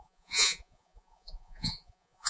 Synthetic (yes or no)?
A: yes